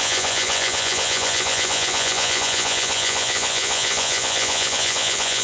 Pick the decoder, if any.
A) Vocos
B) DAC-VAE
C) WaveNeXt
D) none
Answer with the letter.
A